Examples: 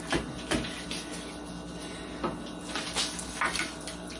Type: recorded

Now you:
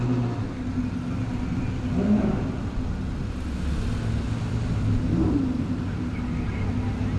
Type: recorded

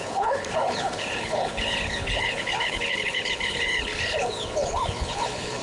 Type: remade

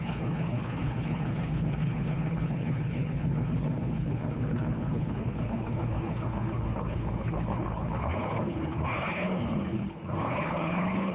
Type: remade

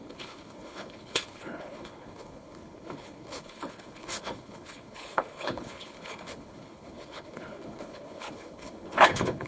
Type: remade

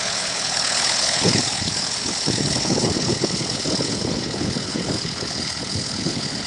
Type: remade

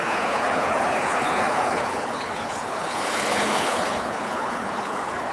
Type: remade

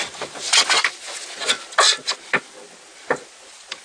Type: recorded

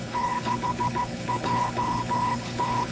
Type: remade